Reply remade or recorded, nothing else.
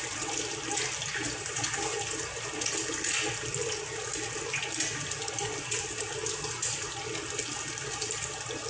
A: recorded